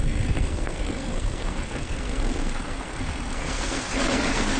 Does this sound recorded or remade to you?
remade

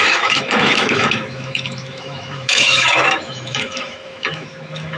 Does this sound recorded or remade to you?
remade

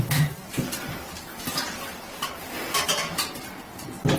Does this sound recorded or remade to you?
recorded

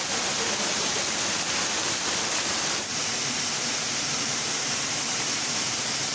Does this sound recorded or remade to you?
recorded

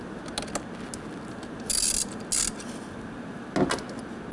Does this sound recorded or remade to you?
recorded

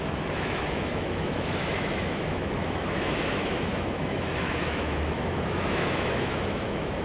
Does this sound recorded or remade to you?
remade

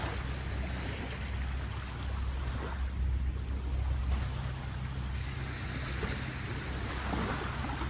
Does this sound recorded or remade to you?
recorded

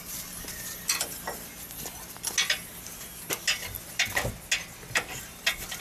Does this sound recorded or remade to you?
recorded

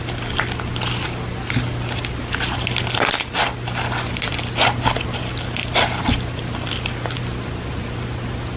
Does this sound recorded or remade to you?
recorded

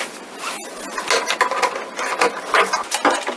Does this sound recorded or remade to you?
recorded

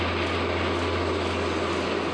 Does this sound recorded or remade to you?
recorded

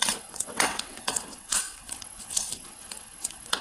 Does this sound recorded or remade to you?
remade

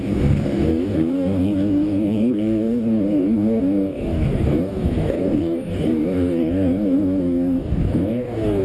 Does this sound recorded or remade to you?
remade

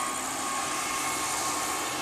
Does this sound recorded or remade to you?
recorded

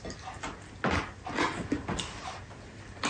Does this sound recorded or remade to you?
recorded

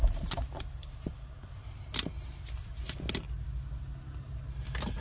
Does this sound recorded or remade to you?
recorded